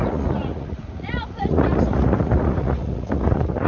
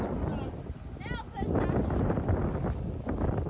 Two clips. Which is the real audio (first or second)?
second